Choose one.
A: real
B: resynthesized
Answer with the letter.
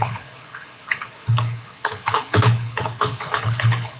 B